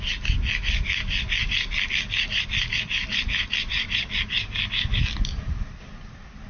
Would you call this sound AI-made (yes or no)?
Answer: no